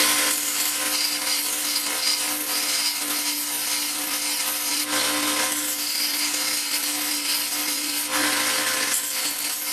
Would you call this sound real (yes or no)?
yes